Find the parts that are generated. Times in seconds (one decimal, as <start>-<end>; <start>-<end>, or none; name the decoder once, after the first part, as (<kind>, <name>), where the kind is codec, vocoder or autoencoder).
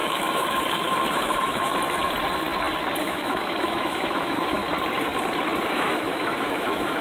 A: 0.0-1.7 (autoencoder, DAC-VAE); 3.0-4.6; 5.6-7.0